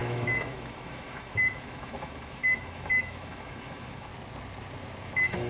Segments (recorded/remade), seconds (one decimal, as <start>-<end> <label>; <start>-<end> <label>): 0.0-4.1 remade; 4.1-5.0 recorded; 5.0-5.5 remade